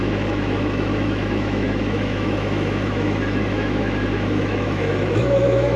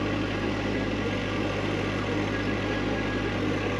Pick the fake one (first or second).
first